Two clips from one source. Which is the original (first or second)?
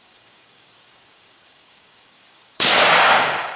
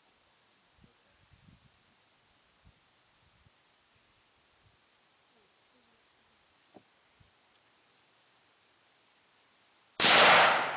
second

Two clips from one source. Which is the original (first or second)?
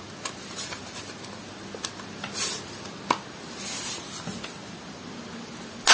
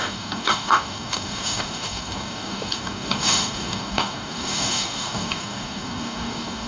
first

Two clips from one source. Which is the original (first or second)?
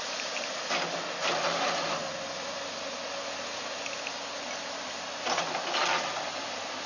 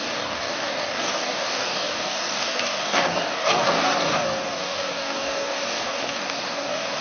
first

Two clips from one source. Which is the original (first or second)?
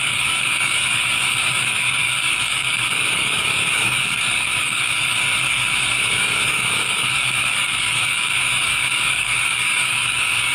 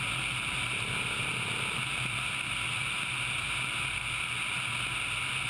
second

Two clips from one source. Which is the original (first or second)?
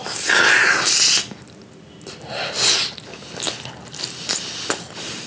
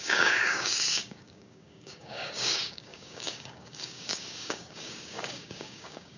first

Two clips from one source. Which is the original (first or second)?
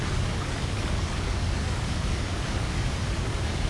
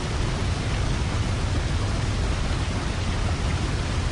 second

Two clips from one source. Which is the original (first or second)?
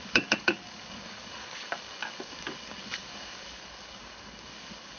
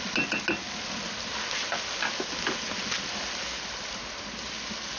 second